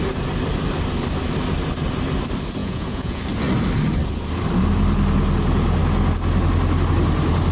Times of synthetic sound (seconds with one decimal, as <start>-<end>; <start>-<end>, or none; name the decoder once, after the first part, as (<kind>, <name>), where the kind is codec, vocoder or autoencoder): 2.6-3.2 (vocoder, Vocos)